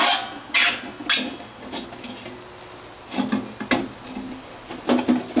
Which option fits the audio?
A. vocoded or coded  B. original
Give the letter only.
B